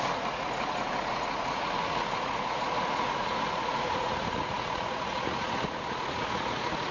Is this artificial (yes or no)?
yes